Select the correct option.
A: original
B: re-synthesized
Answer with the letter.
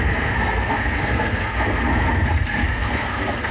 B